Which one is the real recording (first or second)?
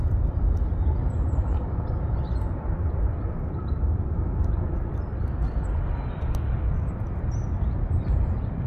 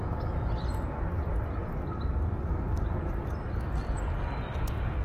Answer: second